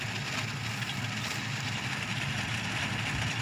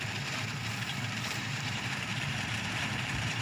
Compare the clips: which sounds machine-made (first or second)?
second